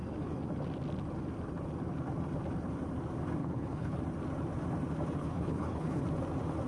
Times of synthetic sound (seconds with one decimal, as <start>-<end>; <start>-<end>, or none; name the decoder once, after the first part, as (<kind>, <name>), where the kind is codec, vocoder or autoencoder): 3.4-4.0 (codec, HILCodec); 5.2-6.0